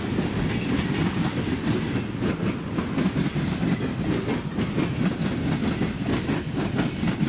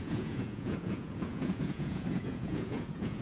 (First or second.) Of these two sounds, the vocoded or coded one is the second